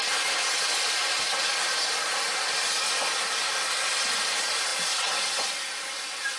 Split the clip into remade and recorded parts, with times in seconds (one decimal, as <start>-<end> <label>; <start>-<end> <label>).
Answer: 0.0-6.4 recorded